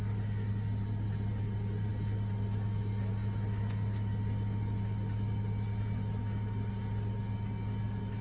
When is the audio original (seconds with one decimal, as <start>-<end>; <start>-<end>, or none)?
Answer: 0.0-8.2